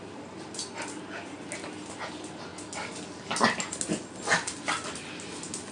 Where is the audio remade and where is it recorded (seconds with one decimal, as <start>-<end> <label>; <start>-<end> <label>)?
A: 0.0-5.7 recorded